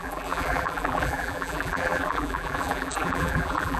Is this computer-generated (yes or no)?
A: yes